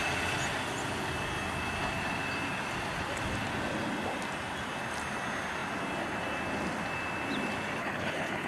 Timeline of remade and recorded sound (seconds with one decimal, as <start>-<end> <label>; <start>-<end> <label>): 0.0-7.8 recorded; 7.8-8.5 remade